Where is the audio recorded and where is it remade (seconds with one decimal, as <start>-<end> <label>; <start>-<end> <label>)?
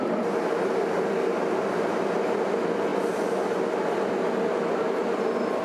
0.0-5.6 recorded